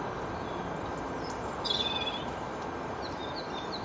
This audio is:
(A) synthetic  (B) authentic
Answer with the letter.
A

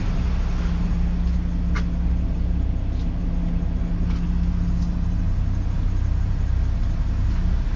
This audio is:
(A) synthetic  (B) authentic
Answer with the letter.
B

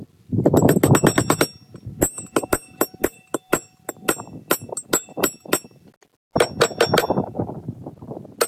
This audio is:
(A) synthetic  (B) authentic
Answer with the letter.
B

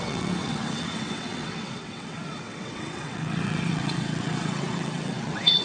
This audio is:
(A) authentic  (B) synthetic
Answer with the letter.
B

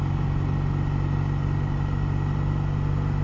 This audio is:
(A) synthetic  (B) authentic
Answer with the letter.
B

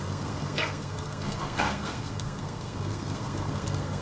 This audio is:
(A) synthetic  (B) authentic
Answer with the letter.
A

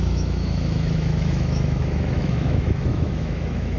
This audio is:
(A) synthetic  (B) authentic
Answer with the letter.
A